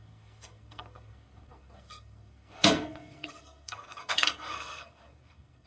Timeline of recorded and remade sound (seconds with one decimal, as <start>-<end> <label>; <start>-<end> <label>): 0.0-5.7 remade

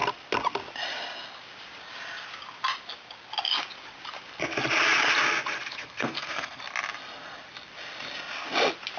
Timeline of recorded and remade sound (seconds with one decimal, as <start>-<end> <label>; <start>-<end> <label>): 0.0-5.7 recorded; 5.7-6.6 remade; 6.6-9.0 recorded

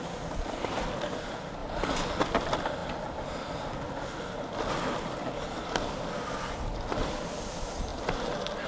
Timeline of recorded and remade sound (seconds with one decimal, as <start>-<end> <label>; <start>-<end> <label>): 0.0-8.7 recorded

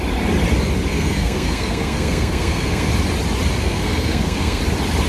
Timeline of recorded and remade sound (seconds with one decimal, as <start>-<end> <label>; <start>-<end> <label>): 0.0-0.9 recorded; 0.9-2.9 remade; 2.9-3.6 recorded; 3.6-4.6 remade; 4.6-5.1 recorded

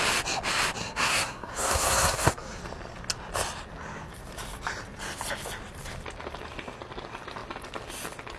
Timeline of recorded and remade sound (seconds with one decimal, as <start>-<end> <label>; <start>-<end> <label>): 0.0-0.8 recorded; 0.8-2.6 remade; 2.6-8.4 recorded